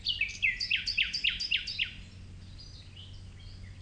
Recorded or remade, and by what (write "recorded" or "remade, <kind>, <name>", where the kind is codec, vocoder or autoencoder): recorded